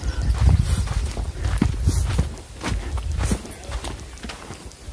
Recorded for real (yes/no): yes